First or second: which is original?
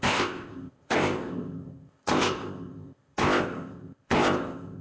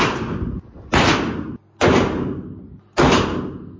second